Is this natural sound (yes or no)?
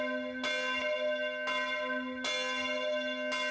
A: yes